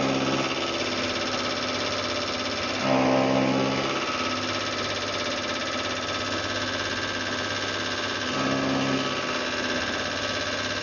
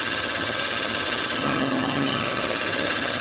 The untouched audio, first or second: first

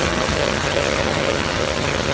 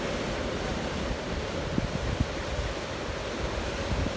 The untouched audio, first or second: second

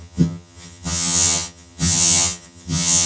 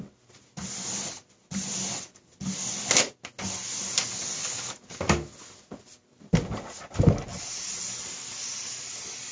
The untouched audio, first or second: second